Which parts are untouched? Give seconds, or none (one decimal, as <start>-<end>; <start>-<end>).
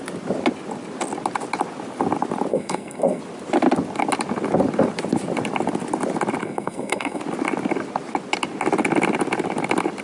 0.0-2.5; 3.2-6.4; 7.2-10.0